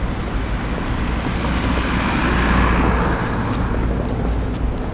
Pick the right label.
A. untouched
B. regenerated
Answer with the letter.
A